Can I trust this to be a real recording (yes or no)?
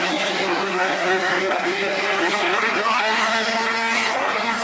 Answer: no